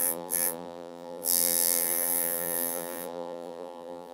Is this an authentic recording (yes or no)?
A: no